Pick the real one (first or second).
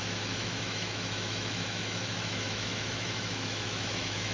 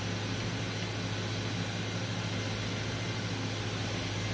second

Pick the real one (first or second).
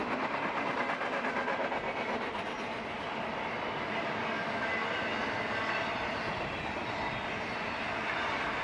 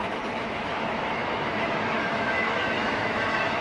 first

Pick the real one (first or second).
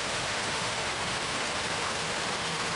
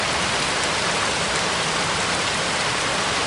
second